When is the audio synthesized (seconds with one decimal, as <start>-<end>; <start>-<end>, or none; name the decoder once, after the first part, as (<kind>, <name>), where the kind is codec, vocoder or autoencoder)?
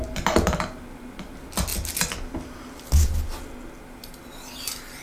none